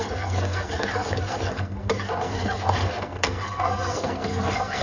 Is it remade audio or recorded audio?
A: remade